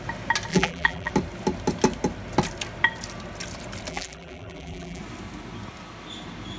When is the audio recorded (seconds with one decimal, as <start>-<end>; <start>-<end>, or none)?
0.0-0.5; 1.1-3.9; 5.0-6.6